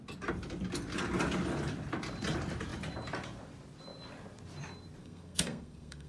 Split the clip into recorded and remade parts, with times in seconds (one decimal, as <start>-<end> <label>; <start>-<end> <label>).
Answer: 0.0-5.0 recorded; 5.0-6.1 remade